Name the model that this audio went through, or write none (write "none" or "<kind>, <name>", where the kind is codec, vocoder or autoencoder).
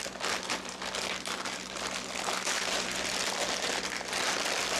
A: none